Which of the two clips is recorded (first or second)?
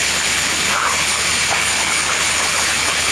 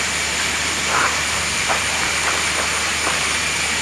second